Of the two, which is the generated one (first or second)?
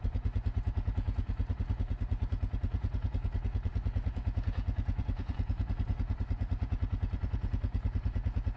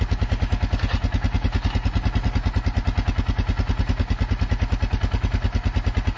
first